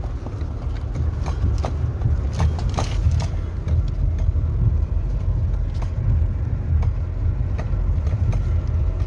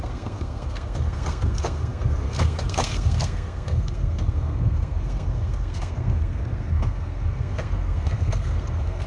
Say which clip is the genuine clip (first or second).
first